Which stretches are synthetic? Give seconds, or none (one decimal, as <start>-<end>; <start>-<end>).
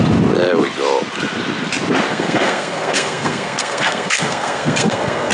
2.1-5.3